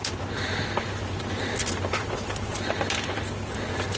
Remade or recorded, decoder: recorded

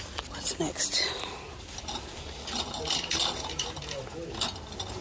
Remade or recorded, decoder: recorded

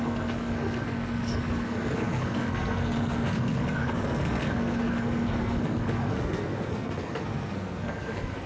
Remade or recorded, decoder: remade, codec, SNAC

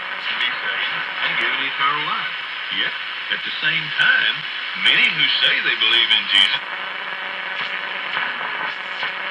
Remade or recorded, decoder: recorded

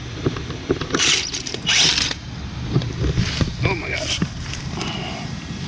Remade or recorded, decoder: remade, vocoder, BigVGAN v2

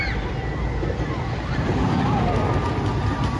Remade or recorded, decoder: recorded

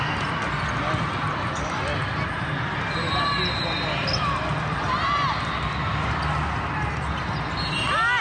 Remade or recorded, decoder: recorded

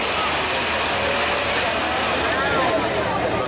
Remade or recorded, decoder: recorded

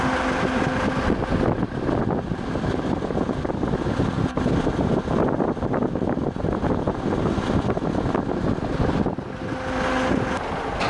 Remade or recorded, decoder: recorded